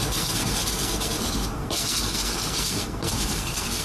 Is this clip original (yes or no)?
no